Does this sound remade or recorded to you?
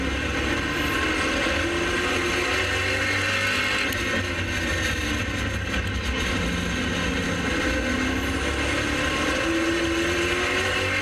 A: recorded